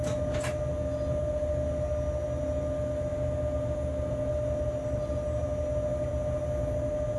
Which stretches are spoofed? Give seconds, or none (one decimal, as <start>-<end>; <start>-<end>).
none